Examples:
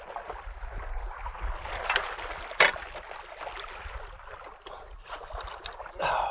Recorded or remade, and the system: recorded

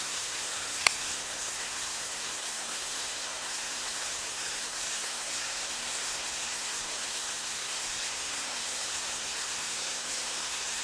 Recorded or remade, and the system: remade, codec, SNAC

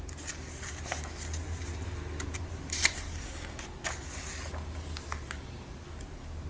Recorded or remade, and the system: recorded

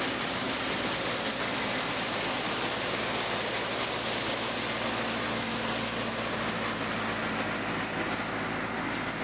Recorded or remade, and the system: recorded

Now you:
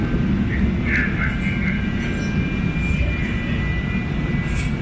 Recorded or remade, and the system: recorded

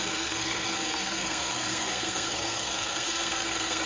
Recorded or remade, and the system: remade, codec, SNAC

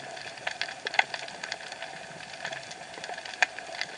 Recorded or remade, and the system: recorded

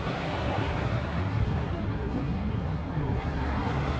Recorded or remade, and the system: remade, codec, SNAC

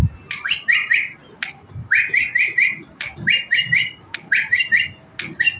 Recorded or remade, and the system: recorded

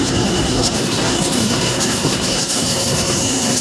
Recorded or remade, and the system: remade, codec, SNAC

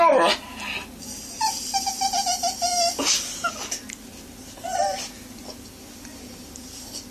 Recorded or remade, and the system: recorded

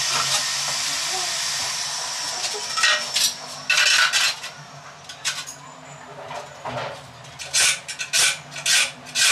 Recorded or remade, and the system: recorded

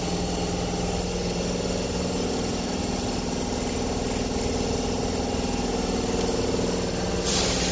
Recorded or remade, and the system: recorded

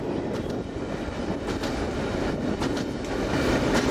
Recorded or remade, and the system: recorded